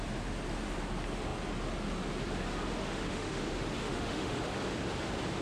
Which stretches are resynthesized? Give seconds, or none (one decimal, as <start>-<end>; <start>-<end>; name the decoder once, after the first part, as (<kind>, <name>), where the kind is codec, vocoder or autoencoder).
2.8-3.4 (autoencoder, DAC-VAE); 3.8-4.4